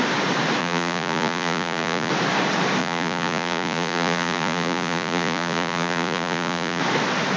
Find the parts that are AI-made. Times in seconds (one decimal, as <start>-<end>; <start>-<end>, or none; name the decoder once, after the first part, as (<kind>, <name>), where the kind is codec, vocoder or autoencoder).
0.6-2.1 (vocoder, Vocos); 2.8-6.8